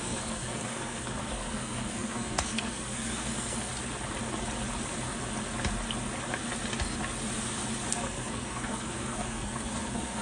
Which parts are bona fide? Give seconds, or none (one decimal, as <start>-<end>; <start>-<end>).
3.7-7.9